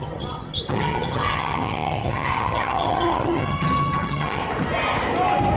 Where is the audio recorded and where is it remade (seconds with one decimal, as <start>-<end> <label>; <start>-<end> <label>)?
0.0-4.4 remade; 4.4-5.6 recorded